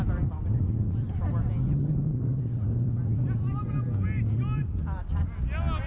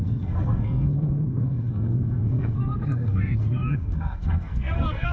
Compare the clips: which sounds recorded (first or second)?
first